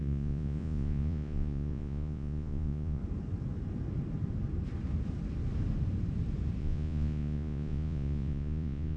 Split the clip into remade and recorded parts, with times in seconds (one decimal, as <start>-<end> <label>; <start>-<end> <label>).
0.0-3.0 remade; 3.0-6.6 recorded; 6.6-9.0 remade